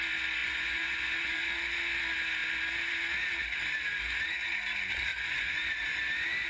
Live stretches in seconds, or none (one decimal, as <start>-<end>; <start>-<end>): 0.0-0.4; 1.6-5.1; 5.6-6.5